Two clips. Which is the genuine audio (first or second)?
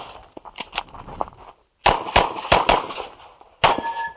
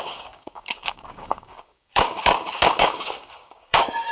first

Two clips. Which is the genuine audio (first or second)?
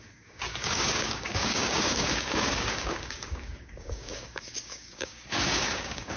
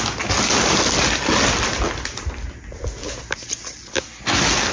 second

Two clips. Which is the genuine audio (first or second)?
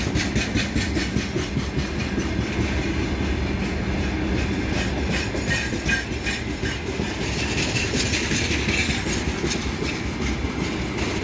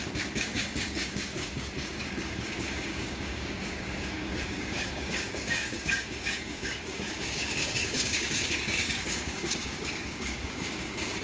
first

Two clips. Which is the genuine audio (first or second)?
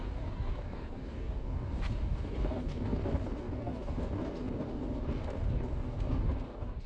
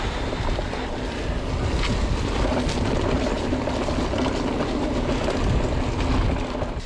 second